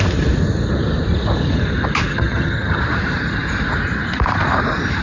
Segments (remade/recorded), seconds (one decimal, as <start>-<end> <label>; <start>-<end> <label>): 0.0-2.1 recorded; 2.1-2.8 remade; 2.8-5.0 recorded